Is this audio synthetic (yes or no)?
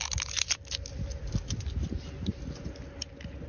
no